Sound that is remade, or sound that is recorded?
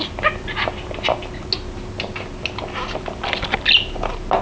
recorded